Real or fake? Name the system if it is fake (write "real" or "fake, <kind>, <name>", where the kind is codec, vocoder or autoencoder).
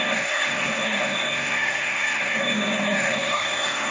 fake, codec, SNAC